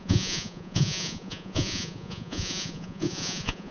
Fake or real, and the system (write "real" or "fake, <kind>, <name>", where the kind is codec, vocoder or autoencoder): fake, vocoder, Vocos